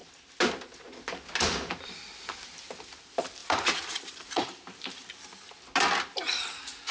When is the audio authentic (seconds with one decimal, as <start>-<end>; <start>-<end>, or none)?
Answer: 0.0-3.4; 5.0-6.9